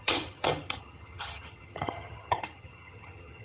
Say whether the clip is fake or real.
fake